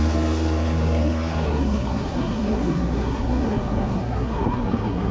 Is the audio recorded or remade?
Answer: remade